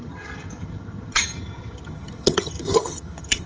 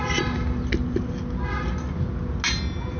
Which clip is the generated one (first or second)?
first